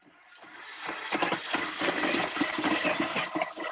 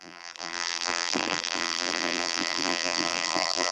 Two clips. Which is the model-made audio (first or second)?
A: second